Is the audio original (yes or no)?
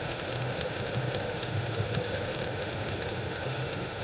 no